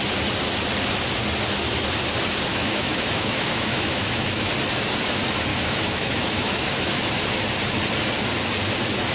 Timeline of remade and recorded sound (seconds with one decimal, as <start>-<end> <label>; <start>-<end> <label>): 0.0-2.5 recorded; 2.5-4.5 remade; 4.5-5.5 recorded; 5.5-7.0 remade; 7.0-9.1 recorded